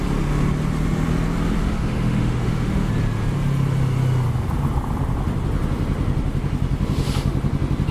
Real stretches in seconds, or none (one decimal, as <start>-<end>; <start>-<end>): 0.0-1.6; 2.9-7.9